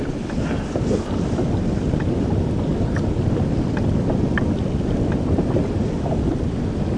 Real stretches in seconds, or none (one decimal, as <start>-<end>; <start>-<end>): 0.0-7.0